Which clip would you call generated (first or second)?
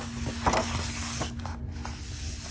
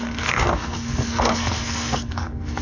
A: second